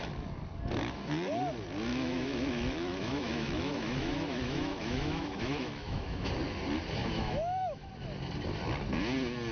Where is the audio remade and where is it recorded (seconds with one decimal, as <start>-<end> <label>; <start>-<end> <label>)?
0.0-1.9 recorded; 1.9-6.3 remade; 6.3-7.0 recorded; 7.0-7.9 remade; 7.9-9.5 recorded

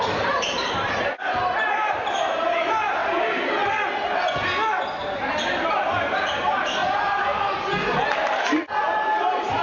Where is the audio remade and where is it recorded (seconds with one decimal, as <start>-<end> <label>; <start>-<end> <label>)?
0.0-3.0 remade; 3.0-5.3 recorded; 5.3-6.8 remade; 6.8-8.8 recorded; 8.8-9.6 remade

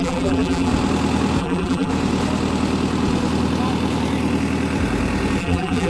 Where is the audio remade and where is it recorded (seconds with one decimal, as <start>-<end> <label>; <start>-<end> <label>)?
0.0-0.7 remade; 0.7-1.4 recorded; 1.4-1.9 remade; 1.9-5.4 recorded; 5.4-5.9 remade

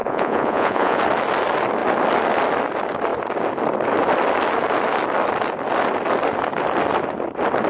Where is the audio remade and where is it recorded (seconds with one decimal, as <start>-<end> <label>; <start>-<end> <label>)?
0.0-1.0 remade; 1.0-7.7 recorded

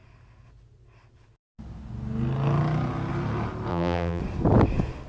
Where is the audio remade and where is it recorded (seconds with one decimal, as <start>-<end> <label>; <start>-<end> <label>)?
0.0-3.7 recorded; 3.7-4.2 remade; 4.2-5.1 recorded

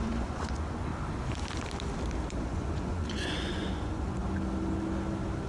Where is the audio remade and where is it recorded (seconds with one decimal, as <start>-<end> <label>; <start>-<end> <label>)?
0.0-0.9 remade; 0.9-2.3 recorded; 2.3-4.2 remade; 4.2-5.5 recorded

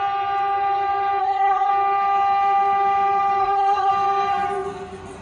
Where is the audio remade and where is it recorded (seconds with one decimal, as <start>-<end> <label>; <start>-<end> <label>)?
0.0-1.2 recorded; 1.2-1.7 remade; 1.7-3.4 recorded; 3.4-3.9 remade; 3.9-5.2 recorded